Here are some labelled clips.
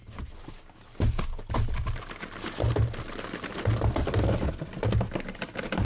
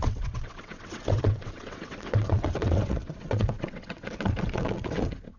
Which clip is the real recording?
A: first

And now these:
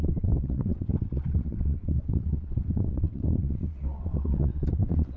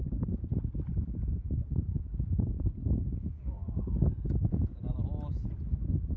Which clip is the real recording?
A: second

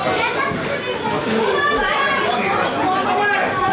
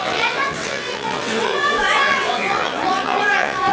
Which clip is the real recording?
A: first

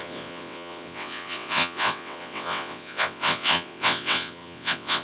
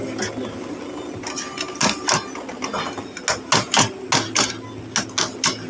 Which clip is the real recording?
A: second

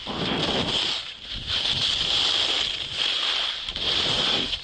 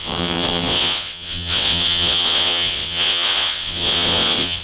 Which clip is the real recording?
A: first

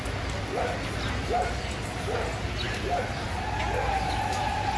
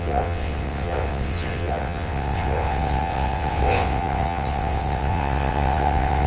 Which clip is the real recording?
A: first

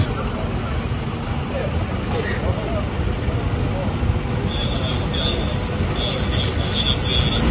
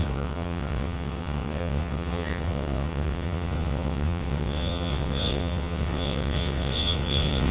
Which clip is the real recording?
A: first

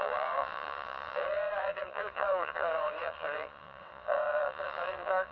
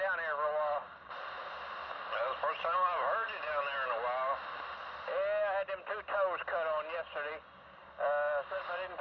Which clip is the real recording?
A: second